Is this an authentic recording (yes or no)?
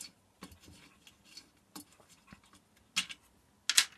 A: yes